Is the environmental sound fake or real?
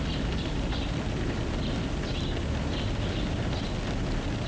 real